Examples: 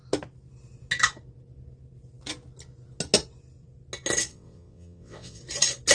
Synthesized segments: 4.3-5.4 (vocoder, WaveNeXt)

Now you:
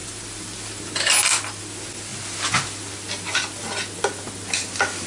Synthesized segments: none

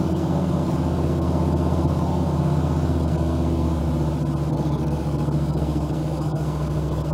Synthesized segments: 0.0-3.8 (codec, SNAC); 4.5-7.1

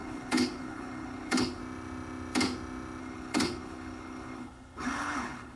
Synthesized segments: 0.0-1.6 (codec, HILCodec); 3.0-5.6

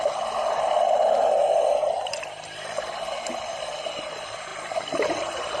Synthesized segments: none

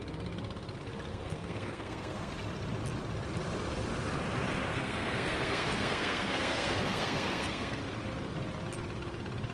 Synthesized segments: 1.1-2.3 (codec, SNAC); 4.7-7.8

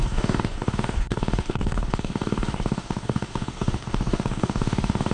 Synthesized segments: 0.0-5.1 (codec, DAC)

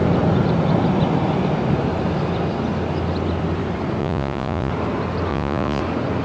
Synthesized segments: 4.0-4.7 (vocoder, Vocos); 5.3-5.8